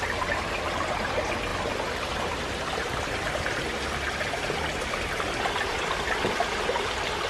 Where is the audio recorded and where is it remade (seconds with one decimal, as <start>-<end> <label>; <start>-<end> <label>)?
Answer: 0.0-1.5 recorded; 1.5-4.9 remade; 4.9-7.3 recorded